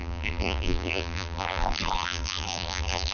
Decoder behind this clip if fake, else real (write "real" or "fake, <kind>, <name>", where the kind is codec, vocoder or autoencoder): fake, vocoder, BigVGAN v2